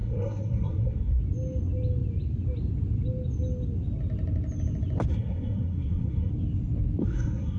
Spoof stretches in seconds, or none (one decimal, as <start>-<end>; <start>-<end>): 0.0-1.2; 5.1-6.3; 7.0-7.6